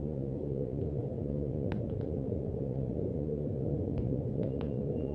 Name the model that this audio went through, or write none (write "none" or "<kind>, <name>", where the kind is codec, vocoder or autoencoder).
vocoder, Vocos